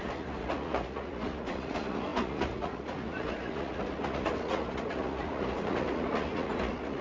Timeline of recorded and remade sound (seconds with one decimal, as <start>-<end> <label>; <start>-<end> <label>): 0.0-7.0 remade